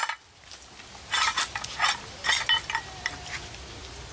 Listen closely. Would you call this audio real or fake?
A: real